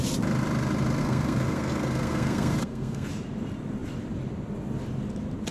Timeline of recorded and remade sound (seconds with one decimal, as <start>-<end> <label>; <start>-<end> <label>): 0.0-1.0 recorded; 1.0-3.1 remade; 3.1-5.5 recorded